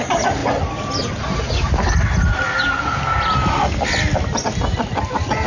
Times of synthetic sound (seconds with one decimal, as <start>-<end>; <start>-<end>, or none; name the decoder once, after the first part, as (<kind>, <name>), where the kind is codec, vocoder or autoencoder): none